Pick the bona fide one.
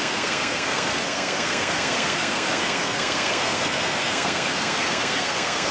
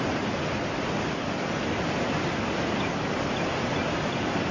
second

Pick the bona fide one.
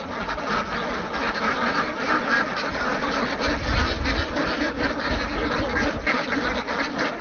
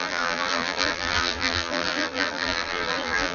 first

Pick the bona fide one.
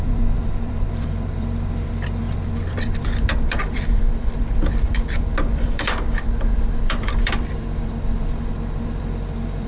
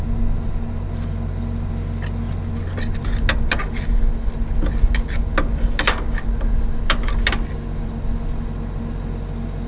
second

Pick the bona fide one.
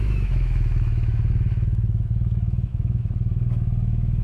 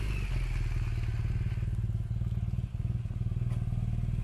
second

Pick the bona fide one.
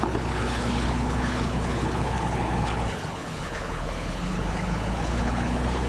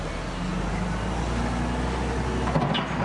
second